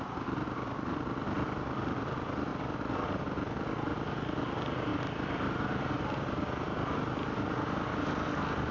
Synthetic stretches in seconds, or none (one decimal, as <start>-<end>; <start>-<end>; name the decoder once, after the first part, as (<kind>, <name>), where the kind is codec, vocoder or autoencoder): 2.5-3.2 (vocoder, BigVGAN v2); 4.9-6.1